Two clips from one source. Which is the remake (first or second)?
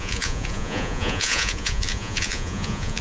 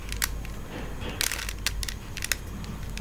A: first